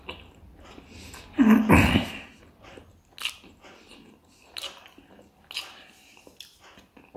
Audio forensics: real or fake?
real